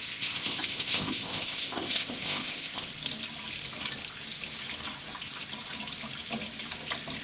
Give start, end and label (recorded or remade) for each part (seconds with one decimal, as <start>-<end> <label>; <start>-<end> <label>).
0.0-2.9 remade; 2.9-7.2 recorded